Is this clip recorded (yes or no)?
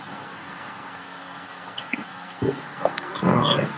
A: no